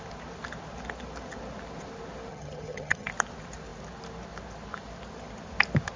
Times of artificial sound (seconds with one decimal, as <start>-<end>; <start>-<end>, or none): 2.3-3.1